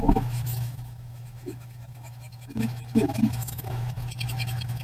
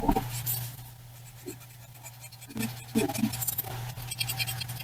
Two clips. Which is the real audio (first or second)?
second